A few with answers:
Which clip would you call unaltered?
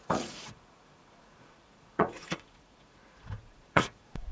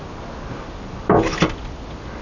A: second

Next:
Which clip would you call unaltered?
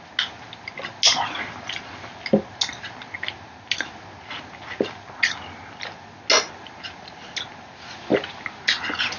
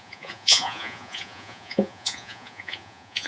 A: first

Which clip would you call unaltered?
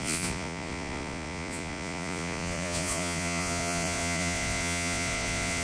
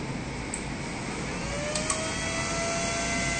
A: second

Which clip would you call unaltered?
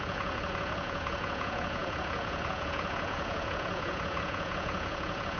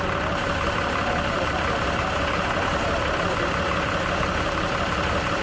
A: second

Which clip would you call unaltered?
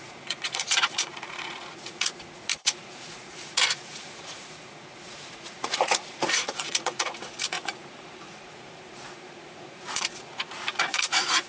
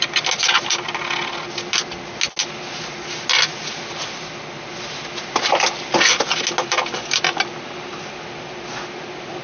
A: second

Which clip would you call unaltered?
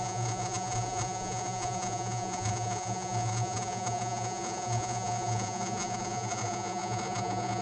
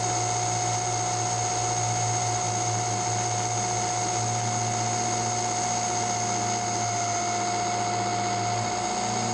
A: second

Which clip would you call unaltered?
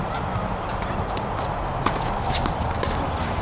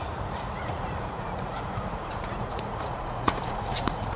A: first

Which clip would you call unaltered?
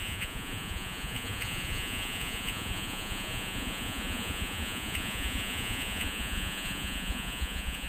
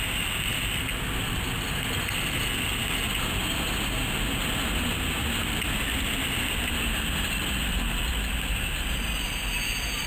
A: second